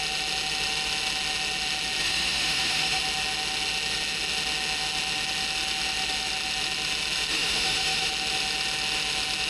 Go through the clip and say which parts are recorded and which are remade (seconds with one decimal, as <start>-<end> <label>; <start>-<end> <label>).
0.0-2.0 recorded; 2.0-3.0 remade; 3.0-7.3 recorded; 7.3-8.1 remade; 8.1-9.5 recorded